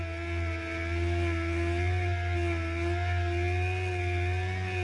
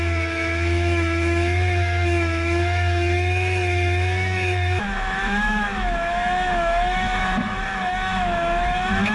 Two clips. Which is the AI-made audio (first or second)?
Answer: second